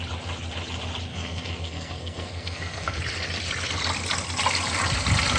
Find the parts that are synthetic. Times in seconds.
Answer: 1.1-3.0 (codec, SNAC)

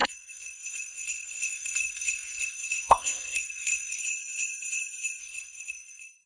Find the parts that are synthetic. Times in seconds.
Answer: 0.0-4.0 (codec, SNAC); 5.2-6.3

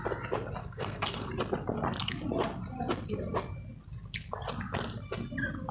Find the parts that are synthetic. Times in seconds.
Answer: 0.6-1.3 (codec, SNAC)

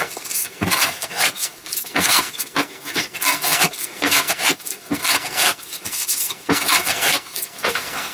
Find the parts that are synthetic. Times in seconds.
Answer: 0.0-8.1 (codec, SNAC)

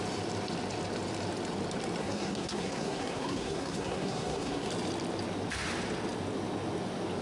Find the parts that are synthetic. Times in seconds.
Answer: 2.0-4.7 (codec, SNAC)

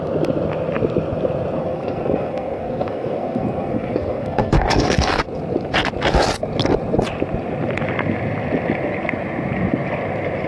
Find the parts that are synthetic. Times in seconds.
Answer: 1.6-5.2 (codec, SNAC)